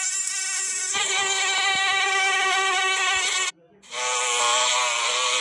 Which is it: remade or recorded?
recorded